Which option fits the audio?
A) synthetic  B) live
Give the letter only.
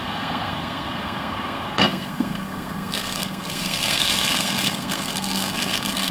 A